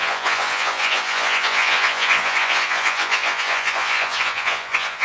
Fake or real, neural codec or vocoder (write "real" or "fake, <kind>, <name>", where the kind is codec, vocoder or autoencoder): fake, vocoder, Vocos